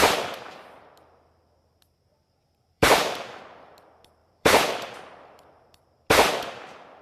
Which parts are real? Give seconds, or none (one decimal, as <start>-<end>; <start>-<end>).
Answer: 0.0-2.1; 3.4-4.2; 5.0-7.0